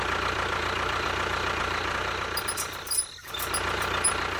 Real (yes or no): no